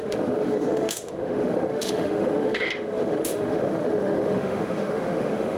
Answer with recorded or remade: remade